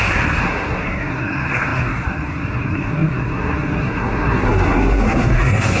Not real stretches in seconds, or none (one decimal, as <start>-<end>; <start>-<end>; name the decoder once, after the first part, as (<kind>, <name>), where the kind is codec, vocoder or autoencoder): 0.0-5.8 (codec, SNAC)

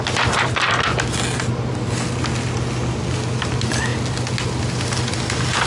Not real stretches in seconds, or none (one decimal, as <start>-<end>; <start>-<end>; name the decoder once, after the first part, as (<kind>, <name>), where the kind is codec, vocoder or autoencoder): none

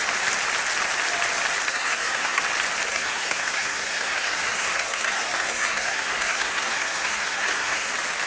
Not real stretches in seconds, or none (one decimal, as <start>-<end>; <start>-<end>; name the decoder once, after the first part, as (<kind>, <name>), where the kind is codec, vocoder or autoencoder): 1.7-2.4 (codec, SNAC); 2.9-7.9

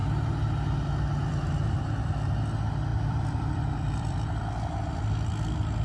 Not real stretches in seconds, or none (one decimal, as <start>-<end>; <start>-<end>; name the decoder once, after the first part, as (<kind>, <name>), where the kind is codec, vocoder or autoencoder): 2.9-5.1 (vocoder, BigVGAN v2)

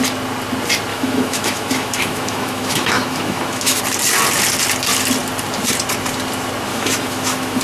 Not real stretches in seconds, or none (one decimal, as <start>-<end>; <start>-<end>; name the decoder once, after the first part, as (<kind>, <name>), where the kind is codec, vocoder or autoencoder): 0.9-3.8 (autoencoder, DAC-VAE); 6.7-7.6